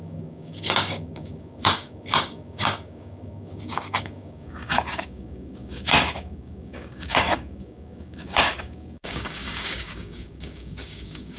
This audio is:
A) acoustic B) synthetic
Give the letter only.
B